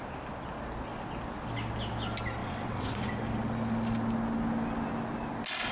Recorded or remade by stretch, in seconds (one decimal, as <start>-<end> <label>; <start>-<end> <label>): 0.0-2.4 recorded; 2.4-3.1 remade; 3.1-5.7 recorded